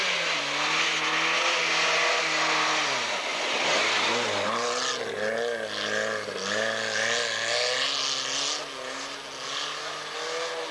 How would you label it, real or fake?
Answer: real